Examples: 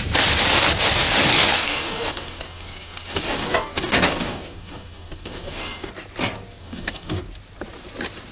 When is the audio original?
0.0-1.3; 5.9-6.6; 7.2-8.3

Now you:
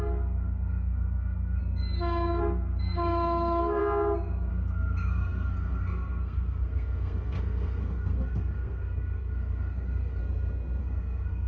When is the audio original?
1.6-2.4; 3.8-4.5; 10.2-10.8

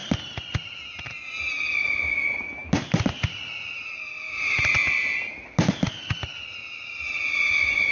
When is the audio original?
0.0-7.9

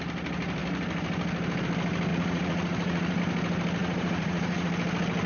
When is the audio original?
0.0-2.1; 3.2-3.8; 4.7-5.3

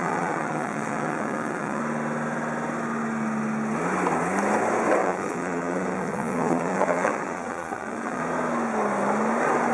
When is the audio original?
1.8-5.0; 8.2-9.7

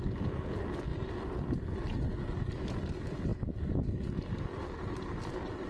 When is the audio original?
0.0-5.7

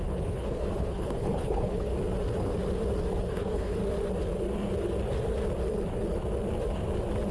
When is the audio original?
1.9-3.2; 3.8-7.3

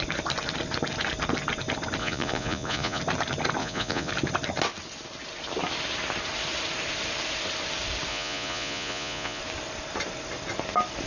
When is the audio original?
0.0-2.0; 3.0-3.6; 4.1-8.1; 9.4-11.1